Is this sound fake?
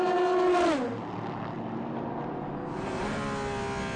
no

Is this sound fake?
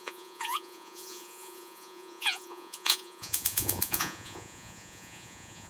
yes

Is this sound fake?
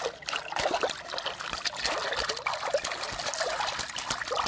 no